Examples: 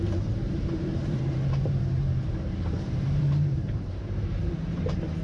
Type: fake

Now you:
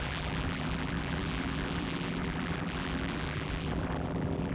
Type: fake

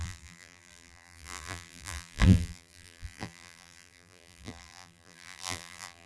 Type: fake